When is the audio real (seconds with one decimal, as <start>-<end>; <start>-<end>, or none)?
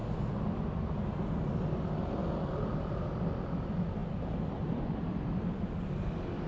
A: 0.0-2.2; 2.7-4.0; 5.7-6.5